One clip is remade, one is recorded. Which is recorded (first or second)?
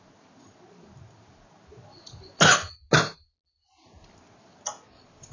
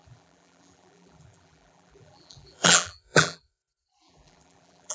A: first